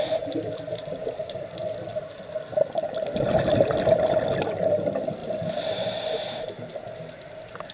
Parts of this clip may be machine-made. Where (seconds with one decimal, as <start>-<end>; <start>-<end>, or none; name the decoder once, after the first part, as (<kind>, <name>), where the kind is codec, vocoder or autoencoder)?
none